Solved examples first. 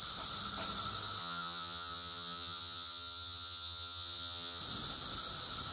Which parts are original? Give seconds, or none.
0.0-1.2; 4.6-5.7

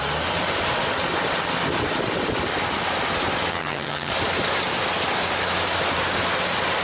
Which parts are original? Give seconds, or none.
0.0-3.5; 4.1-6.8

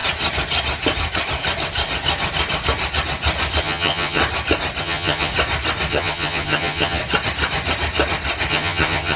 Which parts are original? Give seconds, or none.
0.0-3.6; 4.2-4.8; 5.3-5.9; 7.0-8.5